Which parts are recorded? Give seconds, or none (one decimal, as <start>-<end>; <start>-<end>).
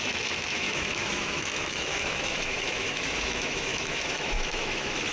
none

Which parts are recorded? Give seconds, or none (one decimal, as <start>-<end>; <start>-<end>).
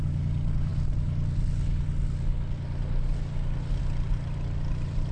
0.0-5.1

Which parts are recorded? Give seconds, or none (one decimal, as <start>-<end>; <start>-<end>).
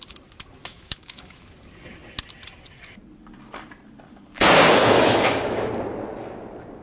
0.0-0.7; 1.5-4.8; 5.7-6.8